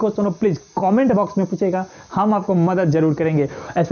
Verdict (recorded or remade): recorded